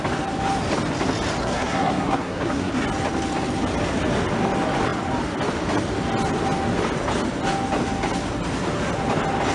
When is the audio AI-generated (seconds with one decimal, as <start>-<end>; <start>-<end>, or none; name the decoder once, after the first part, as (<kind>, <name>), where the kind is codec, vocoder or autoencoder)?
1.4-2.7 (codec, SNAC)